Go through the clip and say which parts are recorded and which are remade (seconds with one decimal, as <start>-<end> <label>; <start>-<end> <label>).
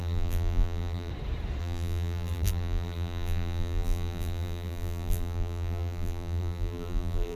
0.0-1.1 remade; 1.1-1.6 recorded; 1.6-7.3 remade